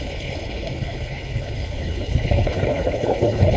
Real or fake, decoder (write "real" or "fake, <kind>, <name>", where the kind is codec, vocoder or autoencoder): fake, codec, HILCodec